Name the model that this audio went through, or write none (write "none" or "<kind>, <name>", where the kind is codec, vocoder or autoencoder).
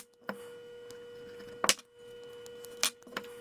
none